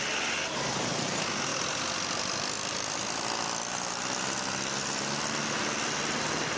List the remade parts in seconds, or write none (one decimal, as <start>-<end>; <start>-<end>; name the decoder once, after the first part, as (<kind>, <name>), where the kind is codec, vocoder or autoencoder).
1.5-3.9 (vocoder, BigVGAN v2)